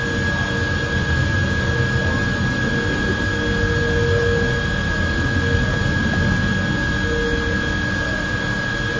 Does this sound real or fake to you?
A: real